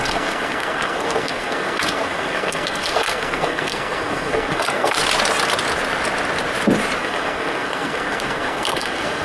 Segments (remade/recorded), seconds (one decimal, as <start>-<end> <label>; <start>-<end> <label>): 0.0-5.0 remade; 5.0-7.0 recorded; 7.0-9.2 remade